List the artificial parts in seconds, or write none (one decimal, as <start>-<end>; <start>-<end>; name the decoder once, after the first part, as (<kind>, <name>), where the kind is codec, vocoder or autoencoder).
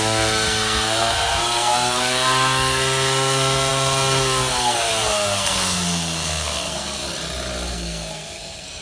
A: 0.0-7.0 (codec, SNAC); 7.7-8.8